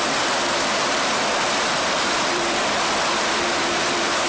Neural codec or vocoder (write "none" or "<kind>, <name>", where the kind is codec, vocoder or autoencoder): vocoder, BigVGAN v2